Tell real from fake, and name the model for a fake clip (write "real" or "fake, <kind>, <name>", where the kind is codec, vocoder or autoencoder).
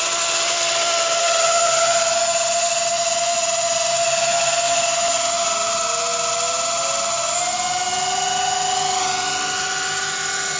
real